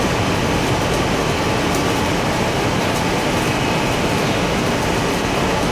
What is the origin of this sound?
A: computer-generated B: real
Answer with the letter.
B